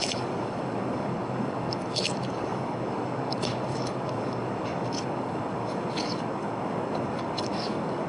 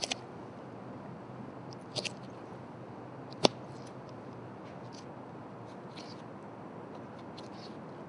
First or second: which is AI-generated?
first